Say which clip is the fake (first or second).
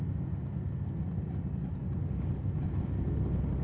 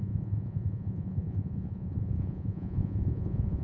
second